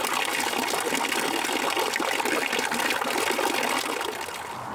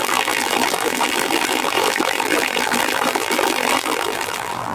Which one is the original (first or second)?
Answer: first